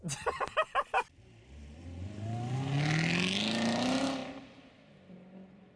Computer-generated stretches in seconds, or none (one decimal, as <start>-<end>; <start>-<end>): none